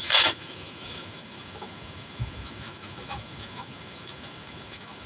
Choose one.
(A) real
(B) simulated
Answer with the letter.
B